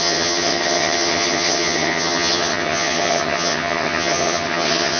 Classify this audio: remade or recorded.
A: remade